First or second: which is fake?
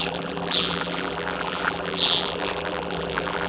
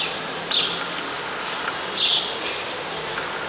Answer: first